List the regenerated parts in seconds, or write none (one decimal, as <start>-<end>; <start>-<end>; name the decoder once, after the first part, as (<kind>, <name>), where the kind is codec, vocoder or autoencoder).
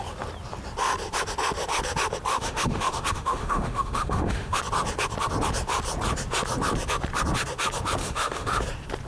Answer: 2.3-4.6 (autoencoder, DAC-VAE); 8.0-8.6